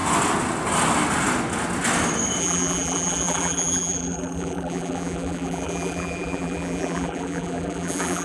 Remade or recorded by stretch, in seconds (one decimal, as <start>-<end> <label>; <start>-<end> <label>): 0.0-2.4 recorded; 2.4-8.2 remade